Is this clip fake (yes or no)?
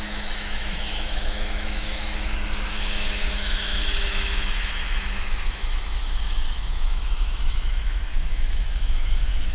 yes